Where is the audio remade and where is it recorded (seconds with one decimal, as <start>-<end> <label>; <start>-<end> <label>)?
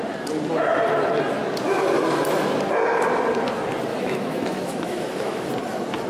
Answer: 0.0-3.9 recorded; 3.9-5.5 remade; 5.5-6.1 recorded